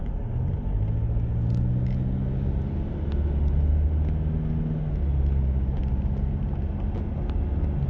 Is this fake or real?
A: real